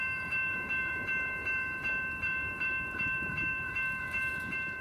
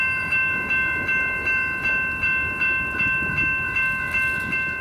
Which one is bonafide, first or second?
second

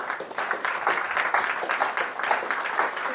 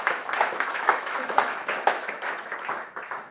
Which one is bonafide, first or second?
first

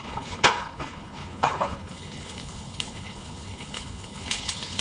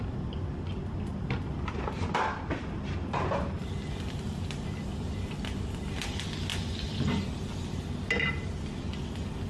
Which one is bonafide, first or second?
second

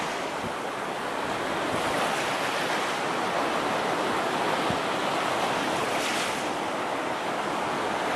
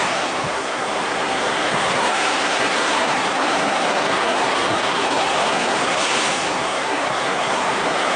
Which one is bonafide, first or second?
first